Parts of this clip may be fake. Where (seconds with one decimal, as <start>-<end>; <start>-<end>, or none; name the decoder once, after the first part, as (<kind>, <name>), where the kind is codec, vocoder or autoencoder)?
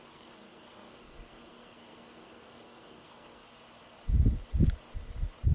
0.0-3.4 (codec, SNAC)